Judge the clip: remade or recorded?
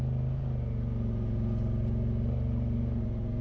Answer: recorded